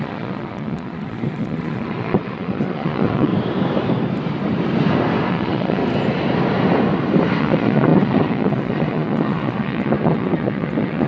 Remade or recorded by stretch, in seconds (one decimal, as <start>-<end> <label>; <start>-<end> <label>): 0.0-3.3 remade; 3.3-5.3 recorded; 5.3-5.8 remade; 5.8-7.4 recorded; 7.4-11.1 remade